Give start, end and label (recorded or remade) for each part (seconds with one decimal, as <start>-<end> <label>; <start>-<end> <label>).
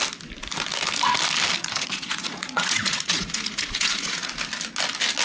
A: 0.0-1.6 recorded; 1.6-4.3 remade; 4.3-5.2 recorded